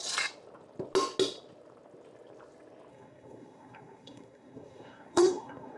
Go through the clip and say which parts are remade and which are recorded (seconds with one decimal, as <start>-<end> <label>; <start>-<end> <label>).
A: 0.0-2.9 recorded; 2.9-5.8 remade